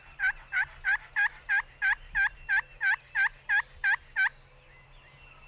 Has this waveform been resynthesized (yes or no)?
no